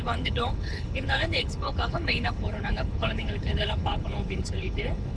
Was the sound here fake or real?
fake